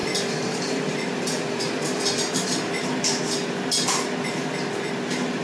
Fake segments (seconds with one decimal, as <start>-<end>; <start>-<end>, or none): 0.0-1.5